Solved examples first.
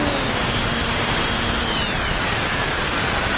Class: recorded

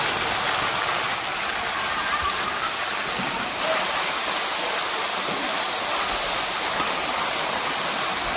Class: recorded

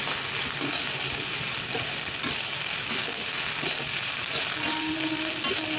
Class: recorded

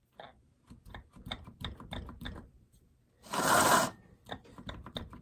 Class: remade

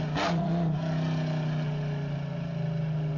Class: recorded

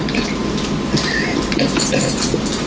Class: recorded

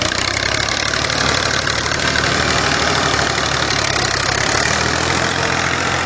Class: remade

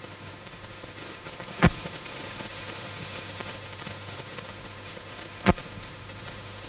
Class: remade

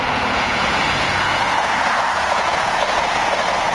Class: remade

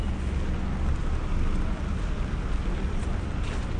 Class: recorded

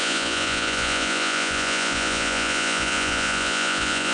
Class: remade